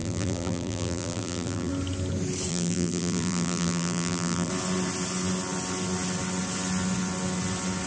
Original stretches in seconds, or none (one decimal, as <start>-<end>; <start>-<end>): 1.7-2.5; 4.5-7.9